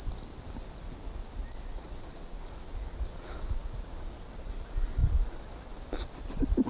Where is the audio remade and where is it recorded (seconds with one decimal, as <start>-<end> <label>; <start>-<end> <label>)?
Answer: 0.0-1.7 recorded; 1.7-4.1 remade; 4.1-6.7 recorded